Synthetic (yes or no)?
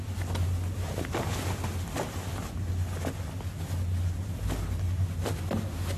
no